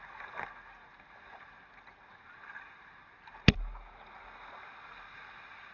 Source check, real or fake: real